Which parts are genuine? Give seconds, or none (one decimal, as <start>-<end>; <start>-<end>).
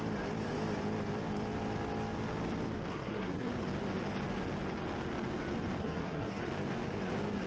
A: 0.0-2.9; 3.5-5.8; 6.4-7.5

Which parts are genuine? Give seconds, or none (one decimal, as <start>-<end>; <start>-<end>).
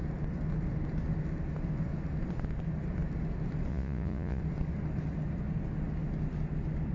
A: 0.0-3.7; 4.4-6.9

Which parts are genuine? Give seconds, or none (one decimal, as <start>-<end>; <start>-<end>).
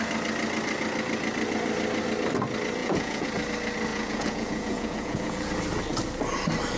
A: 0.0-2.8; 3.3-3.9; 5.5-6.8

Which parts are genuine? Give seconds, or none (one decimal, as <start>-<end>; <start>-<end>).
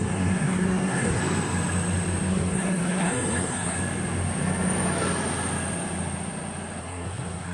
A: 1.2-2.3; 3.8-6.8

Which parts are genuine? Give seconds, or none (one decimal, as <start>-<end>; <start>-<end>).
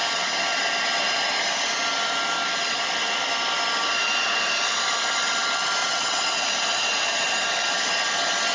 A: 0.0-5.8; 6.4-8.5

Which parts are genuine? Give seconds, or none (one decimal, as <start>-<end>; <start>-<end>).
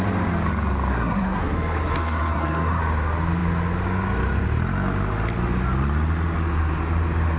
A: 0.0-0.9; 2.8-7.4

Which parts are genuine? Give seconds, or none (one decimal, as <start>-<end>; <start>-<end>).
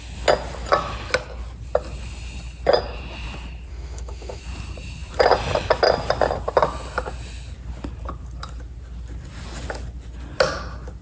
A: 0.0-3.7; 4.4-11.0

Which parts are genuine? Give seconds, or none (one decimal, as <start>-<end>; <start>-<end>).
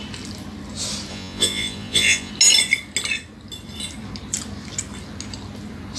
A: 0.0-1.1; 2.3-6.0